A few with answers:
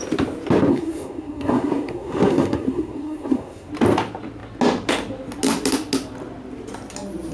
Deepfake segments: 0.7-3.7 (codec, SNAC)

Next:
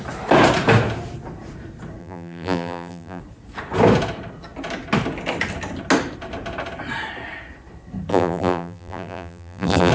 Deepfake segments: 2.0-3.2 (vocoder, BigVGAN v2); 8.1-9.9

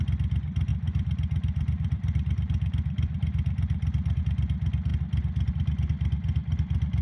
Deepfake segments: 0.7-4.2 (vocoder, BigVGAN v2)